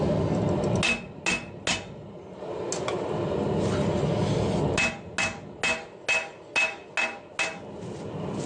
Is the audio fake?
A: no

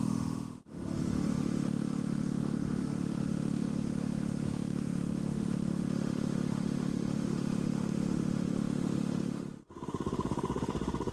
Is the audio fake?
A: yes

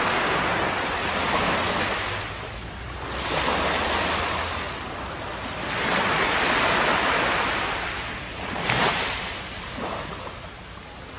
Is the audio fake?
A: no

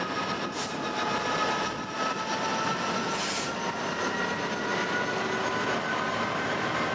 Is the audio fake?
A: no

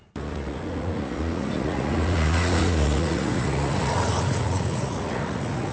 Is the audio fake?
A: yes